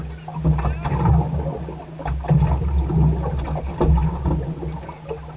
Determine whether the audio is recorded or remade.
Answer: recorded